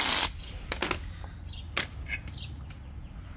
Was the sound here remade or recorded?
recorded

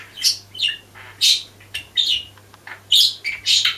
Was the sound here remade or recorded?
recorded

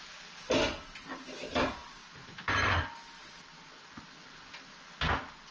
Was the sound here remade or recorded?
recorded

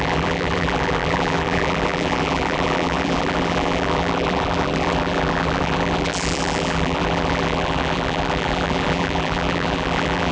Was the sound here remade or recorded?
remade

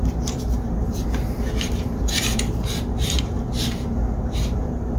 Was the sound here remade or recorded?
remade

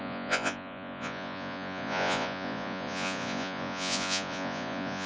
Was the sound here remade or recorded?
remade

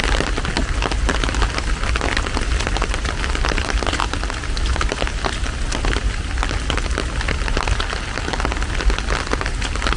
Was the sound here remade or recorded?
recorded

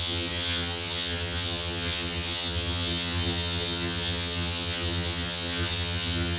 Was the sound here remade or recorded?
remade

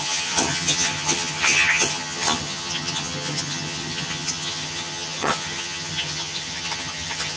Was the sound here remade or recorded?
remade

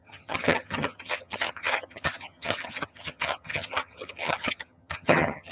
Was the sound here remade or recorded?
remade